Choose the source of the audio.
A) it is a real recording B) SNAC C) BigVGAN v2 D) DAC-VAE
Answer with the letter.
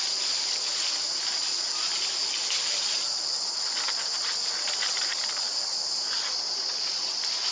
A